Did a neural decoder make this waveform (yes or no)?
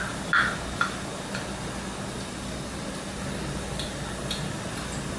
no